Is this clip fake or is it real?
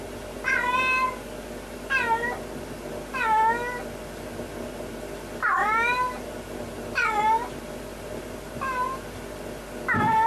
real